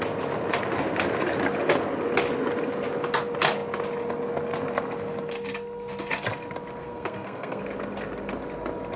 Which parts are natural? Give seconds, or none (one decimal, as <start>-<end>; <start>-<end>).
0.0-6.8; 7.6-9.0